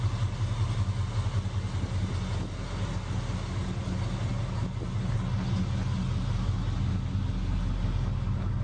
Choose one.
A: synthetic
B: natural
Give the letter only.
B